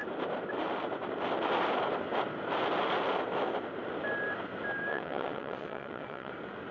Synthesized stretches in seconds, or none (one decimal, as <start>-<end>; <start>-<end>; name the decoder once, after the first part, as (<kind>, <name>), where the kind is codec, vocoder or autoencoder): 4.9-6.3 (vocoder, WaveNeXt)